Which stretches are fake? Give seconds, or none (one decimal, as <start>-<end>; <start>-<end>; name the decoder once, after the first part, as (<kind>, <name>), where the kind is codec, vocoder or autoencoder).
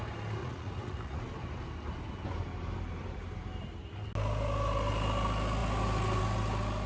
0.4-1.2 (vocoder, Vocos)